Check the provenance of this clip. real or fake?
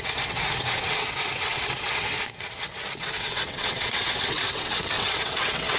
fake